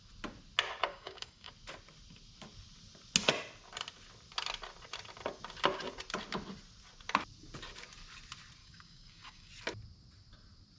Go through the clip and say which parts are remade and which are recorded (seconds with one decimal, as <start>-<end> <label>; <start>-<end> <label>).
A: 0.0-0.9 recorded; 0.9-1.5 remade; 1.5-8.6 recorded; 8.6-9.5 remade; 9.5-10.8 recorded